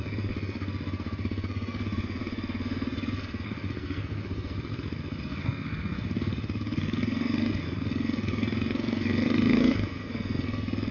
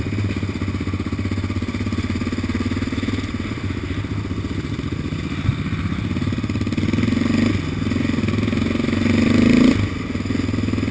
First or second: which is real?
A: second